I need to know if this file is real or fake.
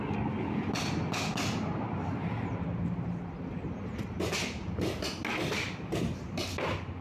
real